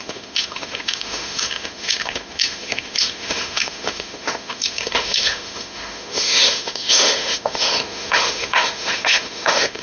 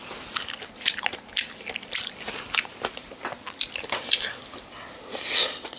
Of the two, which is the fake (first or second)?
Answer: first